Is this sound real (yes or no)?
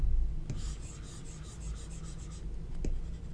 yes